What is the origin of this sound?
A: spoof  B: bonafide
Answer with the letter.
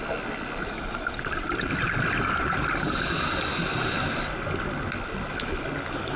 B